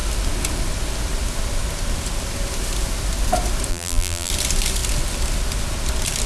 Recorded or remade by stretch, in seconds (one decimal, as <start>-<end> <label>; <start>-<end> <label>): 0.0-3.7 recorded; 3.7-4.3 remade; 4.3-6.3 recorded